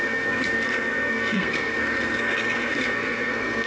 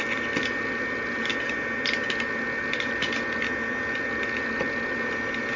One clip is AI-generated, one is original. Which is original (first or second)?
second